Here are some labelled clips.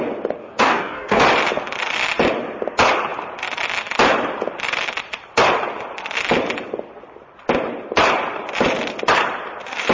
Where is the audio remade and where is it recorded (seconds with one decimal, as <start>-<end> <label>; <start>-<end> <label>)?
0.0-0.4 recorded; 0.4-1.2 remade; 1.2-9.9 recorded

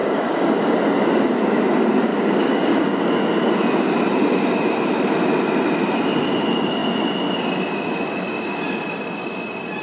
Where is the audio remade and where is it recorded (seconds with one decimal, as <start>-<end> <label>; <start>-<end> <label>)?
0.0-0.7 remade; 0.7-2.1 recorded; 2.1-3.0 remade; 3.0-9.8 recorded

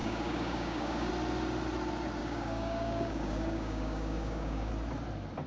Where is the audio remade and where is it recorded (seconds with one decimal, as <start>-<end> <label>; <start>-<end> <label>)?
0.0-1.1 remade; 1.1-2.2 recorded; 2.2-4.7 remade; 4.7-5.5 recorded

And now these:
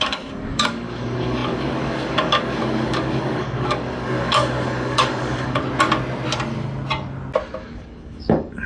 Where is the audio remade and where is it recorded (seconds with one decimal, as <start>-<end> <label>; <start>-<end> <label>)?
0.0-5.6 remade; 5.6-7.6 recorded; 7.6-8.7 remade

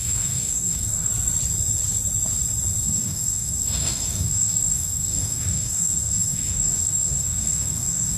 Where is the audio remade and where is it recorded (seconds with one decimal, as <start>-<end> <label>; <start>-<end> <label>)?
0.0-1.1 remade; 1.1-2.8 recorded; 2.8-8.2 remade

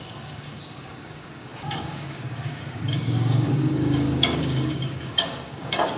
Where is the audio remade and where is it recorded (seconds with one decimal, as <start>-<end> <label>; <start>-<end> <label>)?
0.0-6.0 remade